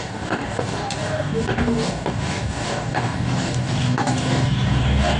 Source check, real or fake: fake